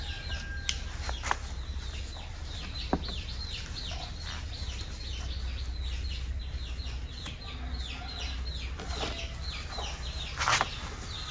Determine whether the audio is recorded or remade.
recorded